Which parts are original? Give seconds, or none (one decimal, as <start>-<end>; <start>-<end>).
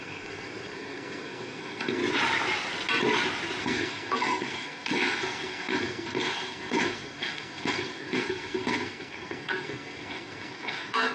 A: 2.0-3.6